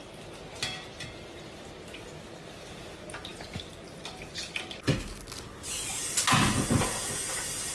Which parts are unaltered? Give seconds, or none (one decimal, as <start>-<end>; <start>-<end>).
0.0-7.7